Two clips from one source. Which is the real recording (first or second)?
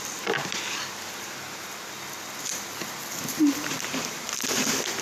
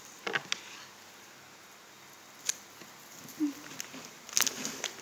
second